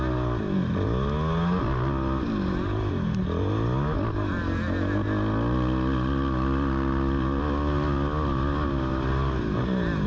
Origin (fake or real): real